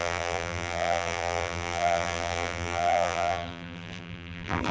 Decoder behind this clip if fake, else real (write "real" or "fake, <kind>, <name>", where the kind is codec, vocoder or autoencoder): fake, vocoder, BigVGAN v2